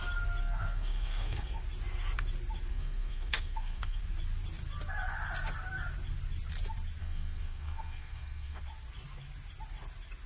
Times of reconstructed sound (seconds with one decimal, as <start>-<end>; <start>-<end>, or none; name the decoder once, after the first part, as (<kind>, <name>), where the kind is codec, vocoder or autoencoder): 0.4-1.6 (codec, SNAC); 2.7-4.0; 7.0-8.6